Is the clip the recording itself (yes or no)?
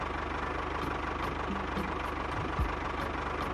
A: yes